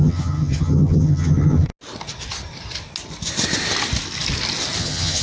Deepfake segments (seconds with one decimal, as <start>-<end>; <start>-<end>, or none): 0.0-1.7; 4.8-5.2